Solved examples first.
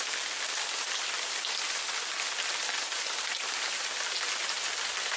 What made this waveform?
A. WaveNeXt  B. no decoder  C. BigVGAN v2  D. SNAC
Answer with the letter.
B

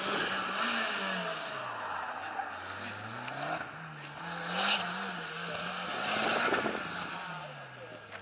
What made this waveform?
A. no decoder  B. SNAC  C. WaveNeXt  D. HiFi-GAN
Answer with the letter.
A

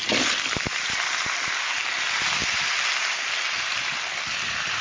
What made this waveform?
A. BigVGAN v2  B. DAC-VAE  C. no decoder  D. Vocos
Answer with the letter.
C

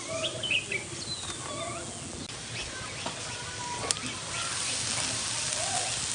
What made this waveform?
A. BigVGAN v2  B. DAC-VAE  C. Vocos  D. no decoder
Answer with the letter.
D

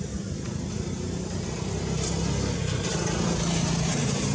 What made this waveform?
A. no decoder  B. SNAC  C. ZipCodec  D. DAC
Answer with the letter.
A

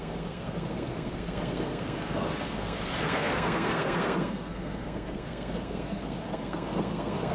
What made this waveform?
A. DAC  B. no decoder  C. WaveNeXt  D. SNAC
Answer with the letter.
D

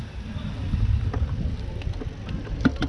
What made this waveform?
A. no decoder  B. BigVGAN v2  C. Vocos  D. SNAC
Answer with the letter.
A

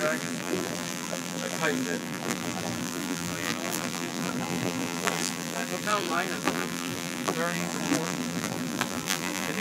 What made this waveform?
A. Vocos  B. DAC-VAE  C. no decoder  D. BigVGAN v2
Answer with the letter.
D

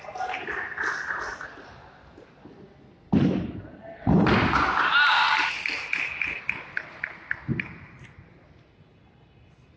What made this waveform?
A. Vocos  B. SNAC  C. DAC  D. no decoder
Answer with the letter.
D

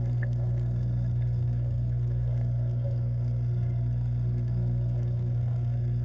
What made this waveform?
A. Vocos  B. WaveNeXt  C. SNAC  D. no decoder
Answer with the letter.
C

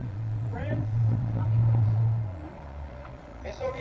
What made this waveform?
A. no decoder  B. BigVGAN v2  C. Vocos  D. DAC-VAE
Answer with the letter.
C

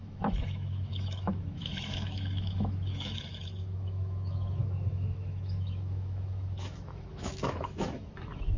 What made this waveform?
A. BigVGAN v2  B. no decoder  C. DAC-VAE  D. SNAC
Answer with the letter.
C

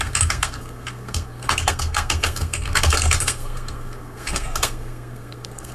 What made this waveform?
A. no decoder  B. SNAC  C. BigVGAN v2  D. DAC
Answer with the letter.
B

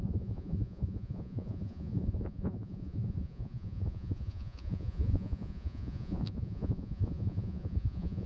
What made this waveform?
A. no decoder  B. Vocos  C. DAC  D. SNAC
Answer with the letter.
B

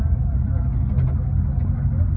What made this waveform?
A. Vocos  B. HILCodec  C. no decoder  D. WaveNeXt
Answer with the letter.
C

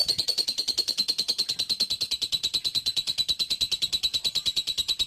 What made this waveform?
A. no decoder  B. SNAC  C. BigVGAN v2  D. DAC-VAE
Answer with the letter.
C